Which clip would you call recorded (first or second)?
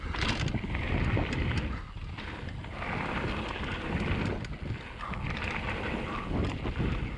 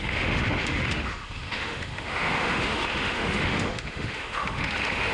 first